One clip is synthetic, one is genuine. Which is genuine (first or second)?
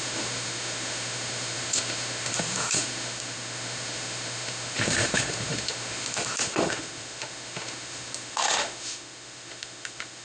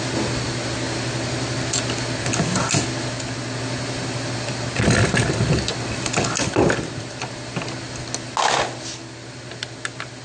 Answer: second